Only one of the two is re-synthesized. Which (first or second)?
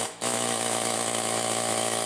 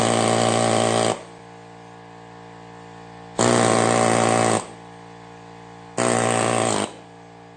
first